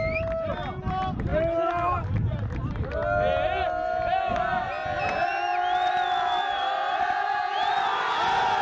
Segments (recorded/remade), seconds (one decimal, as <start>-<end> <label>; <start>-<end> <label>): 0.0-8.6 recorded